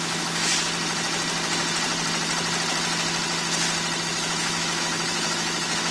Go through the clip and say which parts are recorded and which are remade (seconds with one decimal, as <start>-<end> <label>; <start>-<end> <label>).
0.0-0.5 remade; 0.5-4.0 recorded; 4.0-5.9 remade